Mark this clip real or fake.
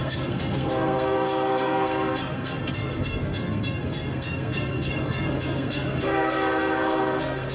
fake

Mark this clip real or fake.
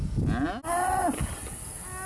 real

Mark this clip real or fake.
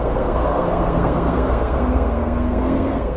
fake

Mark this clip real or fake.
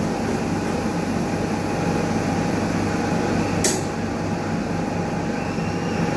real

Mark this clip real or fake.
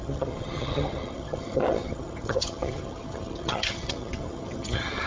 fake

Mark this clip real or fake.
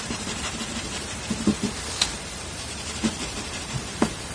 fake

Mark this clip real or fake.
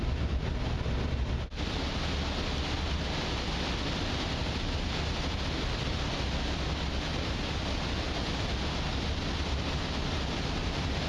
real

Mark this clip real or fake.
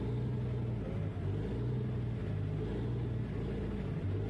real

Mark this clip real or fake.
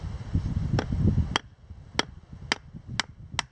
real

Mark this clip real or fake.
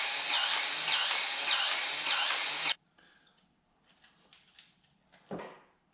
real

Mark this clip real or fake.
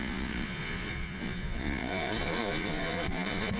fake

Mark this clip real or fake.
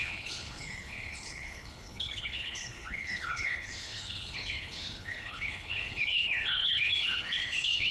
fake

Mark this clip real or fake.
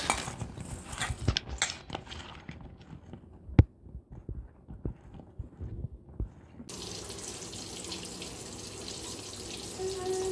real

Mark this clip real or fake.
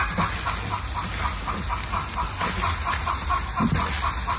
real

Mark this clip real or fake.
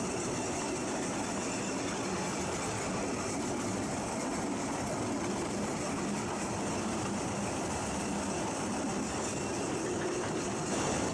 real